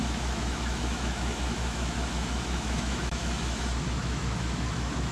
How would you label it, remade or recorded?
remade